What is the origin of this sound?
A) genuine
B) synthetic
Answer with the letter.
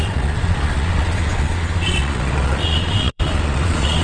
B